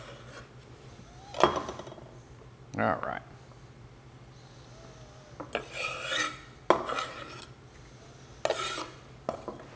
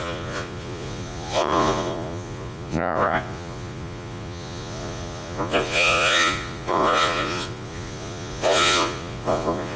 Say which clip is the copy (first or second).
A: second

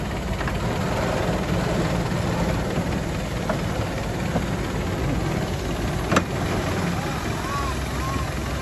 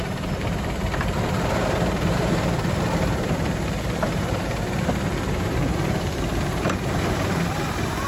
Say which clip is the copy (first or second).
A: second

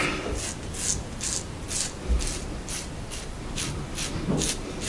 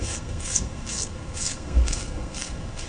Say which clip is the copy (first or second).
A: second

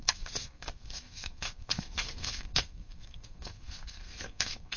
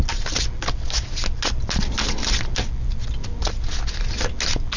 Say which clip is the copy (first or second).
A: first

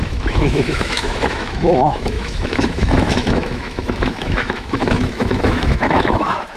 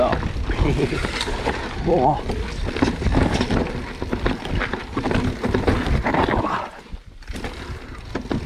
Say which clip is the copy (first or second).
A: first